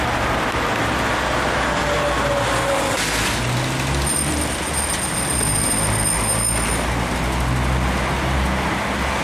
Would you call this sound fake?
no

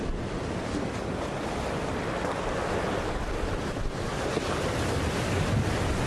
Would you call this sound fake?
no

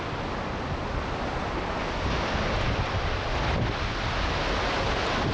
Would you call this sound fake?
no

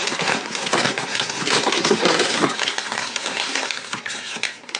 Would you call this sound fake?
yes